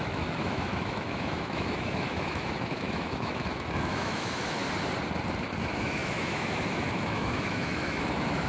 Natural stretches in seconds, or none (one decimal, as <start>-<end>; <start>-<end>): 4.6-5.6